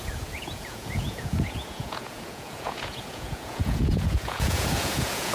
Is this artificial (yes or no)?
yes